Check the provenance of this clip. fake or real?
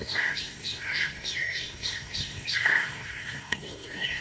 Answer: fake